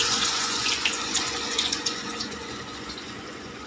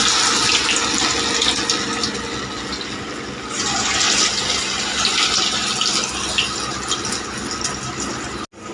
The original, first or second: second